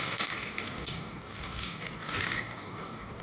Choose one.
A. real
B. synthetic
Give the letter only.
B